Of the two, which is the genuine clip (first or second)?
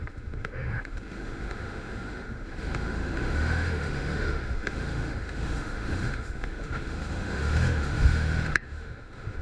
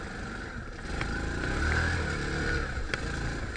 second